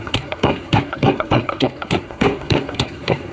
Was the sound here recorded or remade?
remade